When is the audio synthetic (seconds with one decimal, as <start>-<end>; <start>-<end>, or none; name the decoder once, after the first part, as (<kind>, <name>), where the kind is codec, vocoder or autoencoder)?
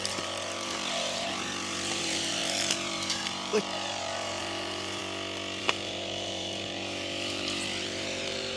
0.0-5.0 (vocoder, BigVGAN v2); 5.6-8.6